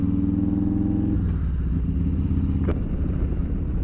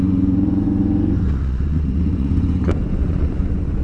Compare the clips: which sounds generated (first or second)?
second